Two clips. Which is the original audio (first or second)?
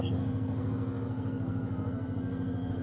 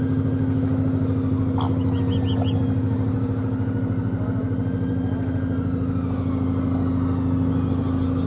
second